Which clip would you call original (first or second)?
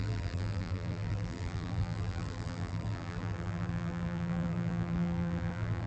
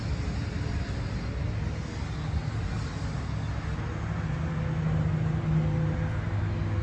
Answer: second